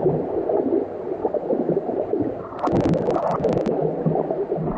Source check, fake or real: real